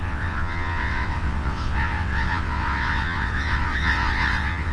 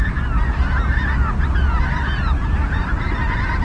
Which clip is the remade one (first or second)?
first